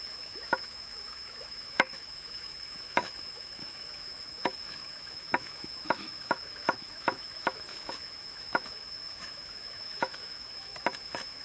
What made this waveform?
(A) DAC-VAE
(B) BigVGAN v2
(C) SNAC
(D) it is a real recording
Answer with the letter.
A